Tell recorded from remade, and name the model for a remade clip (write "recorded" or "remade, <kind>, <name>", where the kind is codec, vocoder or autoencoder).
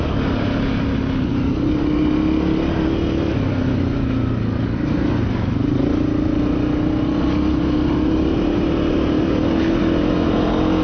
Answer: recorded